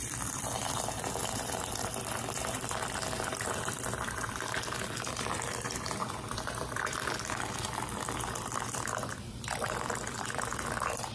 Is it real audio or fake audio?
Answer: fake